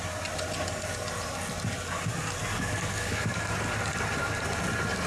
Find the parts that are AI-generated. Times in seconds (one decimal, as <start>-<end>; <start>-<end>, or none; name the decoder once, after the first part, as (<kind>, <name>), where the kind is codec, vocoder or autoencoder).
2.5-3.5 (codec, DAC)